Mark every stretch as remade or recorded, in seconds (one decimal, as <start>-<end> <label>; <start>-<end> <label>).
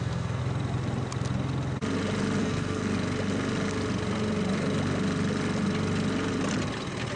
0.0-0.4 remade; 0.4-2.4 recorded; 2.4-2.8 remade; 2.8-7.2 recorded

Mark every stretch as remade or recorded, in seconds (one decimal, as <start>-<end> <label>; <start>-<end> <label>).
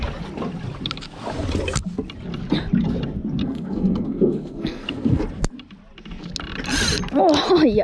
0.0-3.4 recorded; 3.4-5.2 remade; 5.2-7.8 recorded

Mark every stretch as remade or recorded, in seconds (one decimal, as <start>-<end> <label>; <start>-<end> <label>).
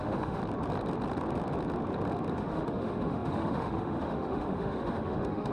0.0-0.4 remade; 0.4-2.3 recorded; 2.3-5.5 remade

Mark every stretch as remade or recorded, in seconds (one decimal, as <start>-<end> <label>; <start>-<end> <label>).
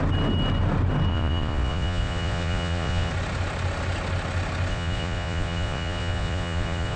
0.0-1.1 recorded; 1.1-3.1 remade; 3.1-4.7 recorded; 4.7-7.0 remade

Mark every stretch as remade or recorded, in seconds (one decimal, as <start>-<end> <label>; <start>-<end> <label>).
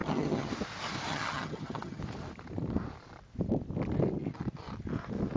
0.0-0.5 remade; 0.5-1.1 recorded; 1.1-2.0 remade; 2.0-5.4 recorded